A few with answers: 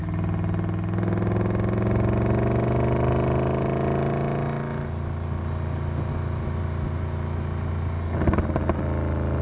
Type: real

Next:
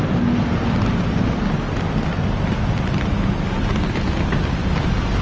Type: real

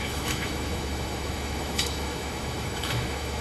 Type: fake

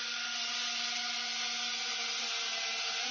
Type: real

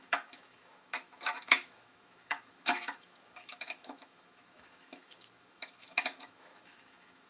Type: fake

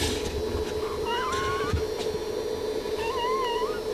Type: real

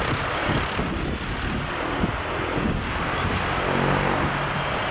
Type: real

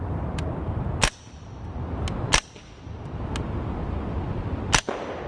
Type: real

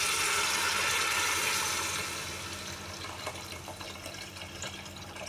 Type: real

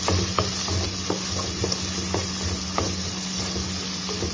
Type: real